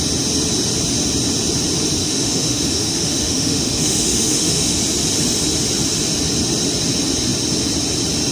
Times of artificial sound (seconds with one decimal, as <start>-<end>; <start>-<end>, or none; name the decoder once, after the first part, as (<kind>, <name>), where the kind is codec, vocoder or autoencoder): 2.0-4.8 (autoencoder, DAC-VAE)